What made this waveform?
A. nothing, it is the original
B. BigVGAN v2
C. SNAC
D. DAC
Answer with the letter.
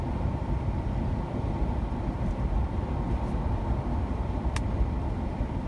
A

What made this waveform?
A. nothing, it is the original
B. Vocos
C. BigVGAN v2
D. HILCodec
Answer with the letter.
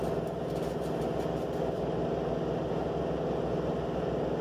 A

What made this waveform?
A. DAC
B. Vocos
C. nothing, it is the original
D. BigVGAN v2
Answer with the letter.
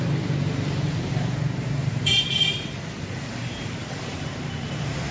D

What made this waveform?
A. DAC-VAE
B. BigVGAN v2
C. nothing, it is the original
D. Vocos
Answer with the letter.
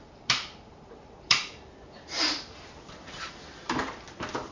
B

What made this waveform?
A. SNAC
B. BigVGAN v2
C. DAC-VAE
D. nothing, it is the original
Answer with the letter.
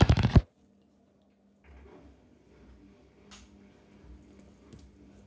D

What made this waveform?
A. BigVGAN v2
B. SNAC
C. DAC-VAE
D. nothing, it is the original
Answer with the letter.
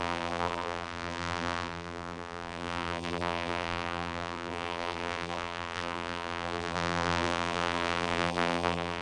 A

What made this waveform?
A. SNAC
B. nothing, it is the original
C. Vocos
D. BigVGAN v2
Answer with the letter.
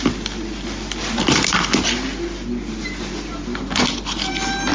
B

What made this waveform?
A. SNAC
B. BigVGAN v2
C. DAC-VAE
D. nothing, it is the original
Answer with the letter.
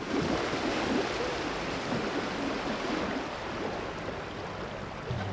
D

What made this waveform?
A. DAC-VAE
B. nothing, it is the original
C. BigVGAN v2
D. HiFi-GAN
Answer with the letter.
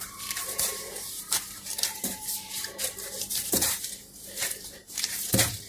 C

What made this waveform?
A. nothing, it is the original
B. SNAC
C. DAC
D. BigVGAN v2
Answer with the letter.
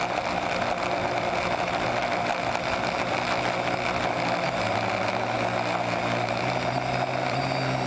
A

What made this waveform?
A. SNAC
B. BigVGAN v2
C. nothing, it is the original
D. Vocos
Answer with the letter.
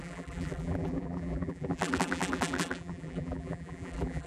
B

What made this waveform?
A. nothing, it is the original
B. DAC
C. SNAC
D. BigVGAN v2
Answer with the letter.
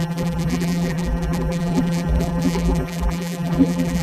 D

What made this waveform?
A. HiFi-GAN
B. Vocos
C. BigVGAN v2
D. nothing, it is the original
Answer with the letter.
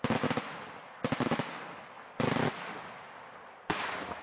D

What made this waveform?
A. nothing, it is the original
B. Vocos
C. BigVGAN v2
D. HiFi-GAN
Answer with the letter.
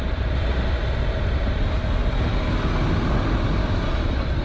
A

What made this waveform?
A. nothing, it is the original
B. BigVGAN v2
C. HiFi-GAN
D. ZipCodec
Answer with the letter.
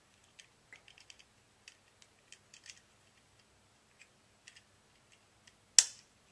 A